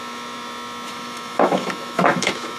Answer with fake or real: fake